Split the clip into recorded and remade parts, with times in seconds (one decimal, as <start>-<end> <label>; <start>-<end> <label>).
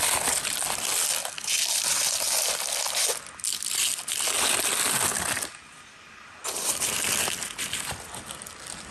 0.0-8.9 recorded